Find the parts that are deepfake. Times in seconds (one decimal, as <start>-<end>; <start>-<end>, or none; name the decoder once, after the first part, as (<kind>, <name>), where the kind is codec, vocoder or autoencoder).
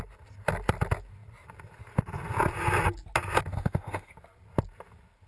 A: 3.5-4.1 (autoencoder, DAC-VAE)